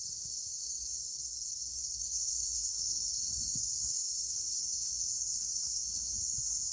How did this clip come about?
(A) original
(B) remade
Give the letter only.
B